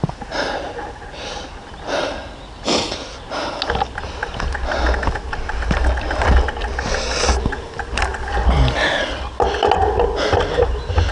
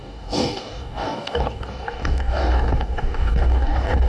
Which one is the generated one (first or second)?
second